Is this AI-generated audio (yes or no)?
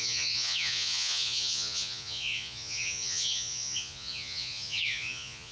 yes